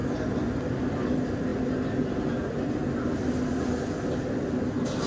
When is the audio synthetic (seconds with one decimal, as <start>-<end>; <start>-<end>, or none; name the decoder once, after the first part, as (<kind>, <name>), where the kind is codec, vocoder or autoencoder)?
none